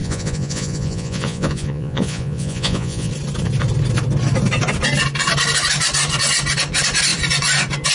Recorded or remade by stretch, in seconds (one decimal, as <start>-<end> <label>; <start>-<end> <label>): 0.0-3.1 remade; 3.1-7.9 recorded